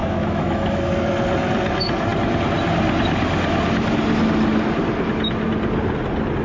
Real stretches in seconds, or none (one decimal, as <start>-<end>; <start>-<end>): 0.9-6.4

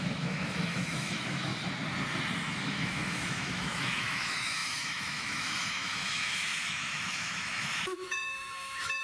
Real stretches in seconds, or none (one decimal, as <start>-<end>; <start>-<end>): 1.5-2.6